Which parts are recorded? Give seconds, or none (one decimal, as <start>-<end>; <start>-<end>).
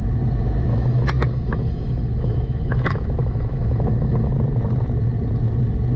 0.0-0.7; 4.3-6.0